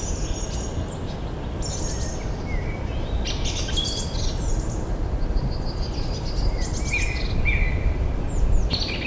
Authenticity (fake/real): real